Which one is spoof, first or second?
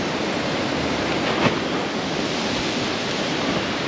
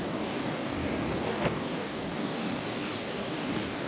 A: second